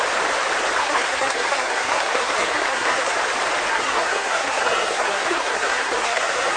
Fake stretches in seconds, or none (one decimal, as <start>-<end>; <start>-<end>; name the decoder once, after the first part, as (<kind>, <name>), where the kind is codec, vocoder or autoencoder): 0.8-3.2 (codec, SNAC); 3.7-6.6